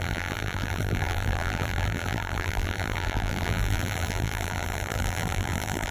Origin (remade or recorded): remade